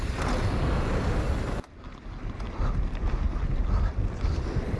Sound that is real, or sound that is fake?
real